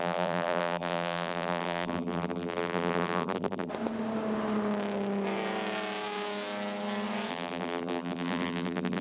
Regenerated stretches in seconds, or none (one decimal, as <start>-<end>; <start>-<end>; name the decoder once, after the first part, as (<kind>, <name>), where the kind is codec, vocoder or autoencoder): 0.0-3.7 (vocoder, BigVGAN v2); 7.3-9.0